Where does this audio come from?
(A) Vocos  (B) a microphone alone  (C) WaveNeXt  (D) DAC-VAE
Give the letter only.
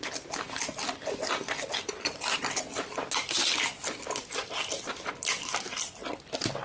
B